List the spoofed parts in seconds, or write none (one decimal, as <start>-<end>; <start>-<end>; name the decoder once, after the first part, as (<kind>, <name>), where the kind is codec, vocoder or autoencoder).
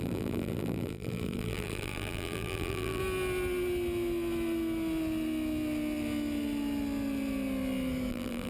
0.0-3.0 (vocoder, BigVGAN v2); 8.1-8.5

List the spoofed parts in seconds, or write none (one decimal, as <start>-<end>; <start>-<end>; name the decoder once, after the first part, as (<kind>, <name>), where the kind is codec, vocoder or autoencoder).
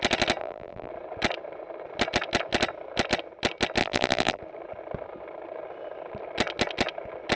0.4-0.9 (vocoder, BigVGAN v2); 3.8-4.4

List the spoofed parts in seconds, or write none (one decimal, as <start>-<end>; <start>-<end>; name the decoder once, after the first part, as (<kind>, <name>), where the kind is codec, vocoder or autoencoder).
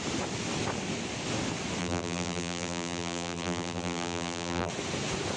1.8-4.7 (vocoder, BigVGAN v2)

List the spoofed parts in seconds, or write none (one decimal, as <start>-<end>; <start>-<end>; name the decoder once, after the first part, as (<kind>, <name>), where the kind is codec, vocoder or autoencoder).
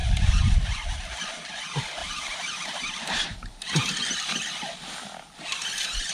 0.0-0.5 (vocoder, BigVGAN v2); 2.0-3.9; 5.5-6.1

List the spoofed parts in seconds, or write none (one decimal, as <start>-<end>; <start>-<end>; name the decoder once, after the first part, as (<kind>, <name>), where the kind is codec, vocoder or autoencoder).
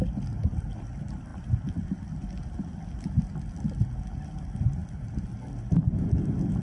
1.3-3.4 (vocoder, BigVGAN v2)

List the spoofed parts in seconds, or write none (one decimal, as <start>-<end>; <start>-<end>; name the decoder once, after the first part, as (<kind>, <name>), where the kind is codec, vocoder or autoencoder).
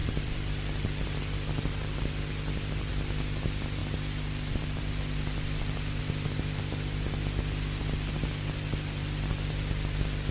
0.0-2.9 (vocoder, BigVGAN v2); 3.8-6.0; 9.0-9.7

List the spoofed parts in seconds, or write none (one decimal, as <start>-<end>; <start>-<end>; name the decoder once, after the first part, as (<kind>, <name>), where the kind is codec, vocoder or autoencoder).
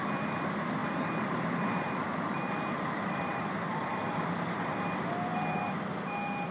0.8-4.7 (vocoder, BigVGAN v2); 5.3-6.0